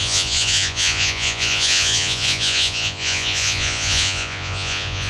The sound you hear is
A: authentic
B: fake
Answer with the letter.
B